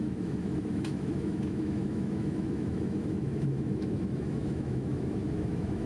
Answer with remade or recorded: remade